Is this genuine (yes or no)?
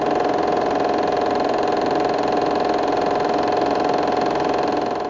yes